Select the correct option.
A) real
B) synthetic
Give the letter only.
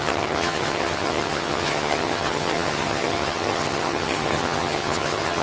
B